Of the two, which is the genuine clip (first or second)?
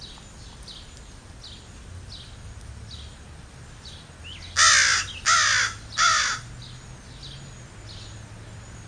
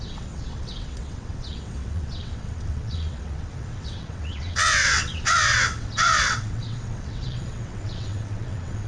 first